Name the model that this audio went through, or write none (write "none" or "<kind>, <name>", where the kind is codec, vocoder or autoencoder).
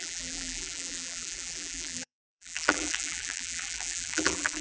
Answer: vocoder, BigVGAN v2